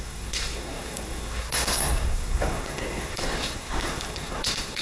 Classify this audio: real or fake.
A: fake